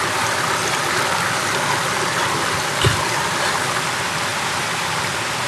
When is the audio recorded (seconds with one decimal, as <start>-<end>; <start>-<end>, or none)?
0.0-4.3; 5.0-5.5